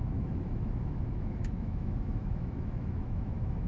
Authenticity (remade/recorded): remade